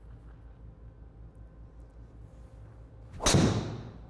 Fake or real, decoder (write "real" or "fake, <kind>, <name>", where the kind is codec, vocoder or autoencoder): real